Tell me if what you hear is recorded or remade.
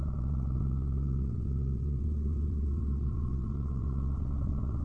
remade